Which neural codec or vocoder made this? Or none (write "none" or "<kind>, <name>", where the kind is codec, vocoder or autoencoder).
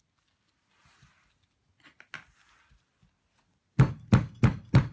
none